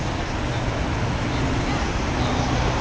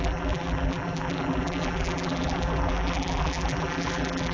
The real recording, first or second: first